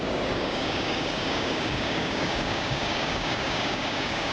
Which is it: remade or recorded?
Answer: remade